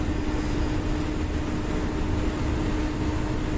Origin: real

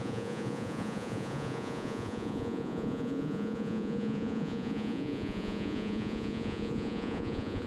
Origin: fake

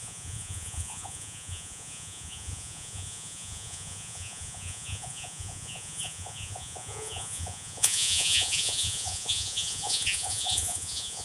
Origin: fake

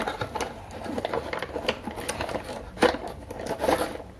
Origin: real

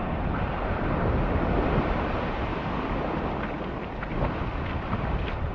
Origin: real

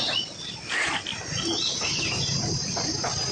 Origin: real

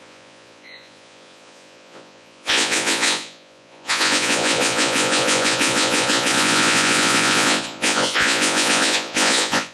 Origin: fake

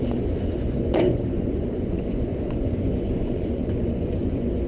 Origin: fake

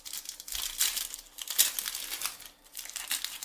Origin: real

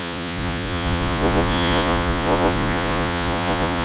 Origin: fake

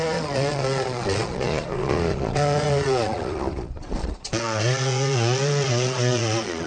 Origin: fake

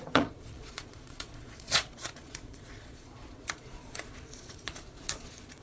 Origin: fake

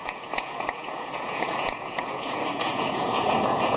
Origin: fake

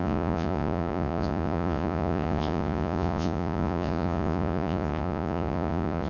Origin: fake